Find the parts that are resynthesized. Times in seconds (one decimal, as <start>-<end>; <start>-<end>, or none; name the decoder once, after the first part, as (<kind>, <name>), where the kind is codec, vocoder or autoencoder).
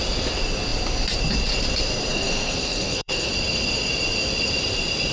2.1-3.3 (codec, SNAC)